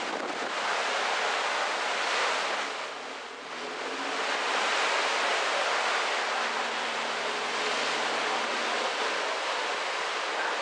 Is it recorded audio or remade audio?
recorded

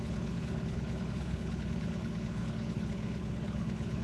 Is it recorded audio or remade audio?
remade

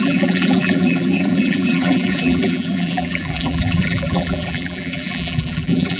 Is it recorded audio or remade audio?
remade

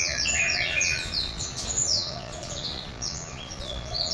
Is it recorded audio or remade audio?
remade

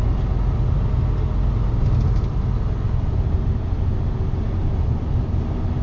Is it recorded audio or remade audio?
recorded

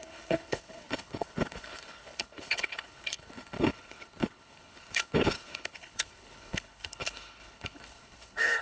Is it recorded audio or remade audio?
remade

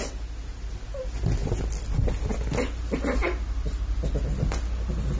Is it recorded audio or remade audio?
recorded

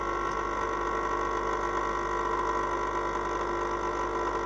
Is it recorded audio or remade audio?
recorded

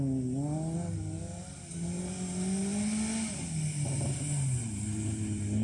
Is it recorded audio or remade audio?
recorded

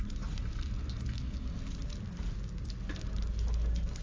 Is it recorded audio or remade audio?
recorded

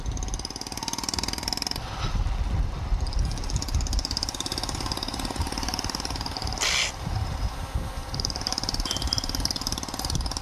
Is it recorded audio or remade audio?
recorded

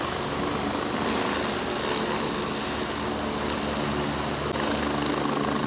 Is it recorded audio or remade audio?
recorded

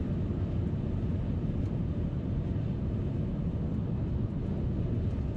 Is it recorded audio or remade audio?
recorded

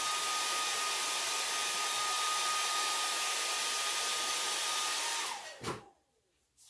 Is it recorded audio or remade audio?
recorded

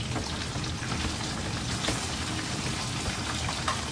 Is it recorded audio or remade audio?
recorded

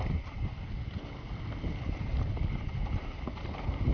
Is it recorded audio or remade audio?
recorded